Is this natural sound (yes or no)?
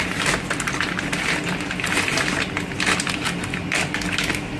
yes